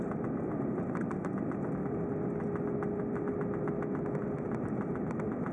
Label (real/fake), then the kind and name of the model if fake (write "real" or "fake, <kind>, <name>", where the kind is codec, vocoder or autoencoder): real